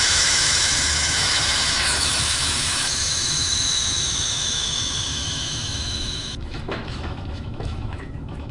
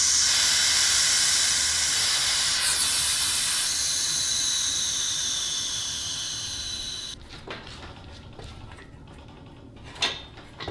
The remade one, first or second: first